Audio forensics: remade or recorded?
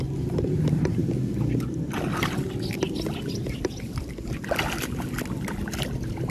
recorded